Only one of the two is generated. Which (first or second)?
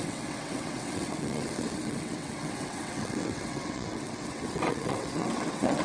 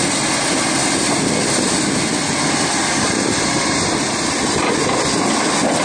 first